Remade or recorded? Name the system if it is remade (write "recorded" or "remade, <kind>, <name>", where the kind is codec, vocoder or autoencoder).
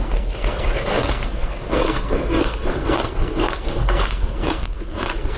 remade, codec, SNAC